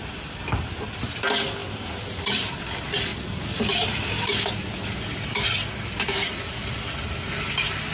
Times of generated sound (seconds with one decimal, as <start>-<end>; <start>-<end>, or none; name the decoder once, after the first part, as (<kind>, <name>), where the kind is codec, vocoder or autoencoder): none